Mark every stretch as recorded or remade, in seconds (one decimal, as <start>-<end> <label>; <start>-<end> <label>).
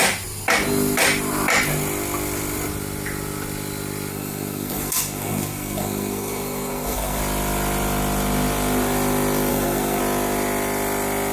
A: 0.0-4.1 recorded; 4.1-7.2 remade; 7.2-9.5 recorded; 9.5-10.0 remade; 10.0-11.3 recorded